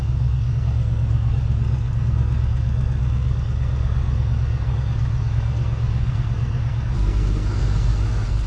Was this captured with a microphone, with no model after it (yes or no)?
no